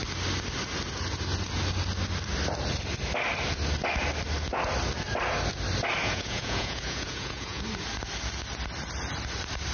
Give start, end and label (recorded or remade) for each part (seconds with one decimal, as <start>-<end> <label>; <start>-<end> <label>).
0.0-6.0 recorded; 6.0-7.6 remade; 7.6-9.7 recorded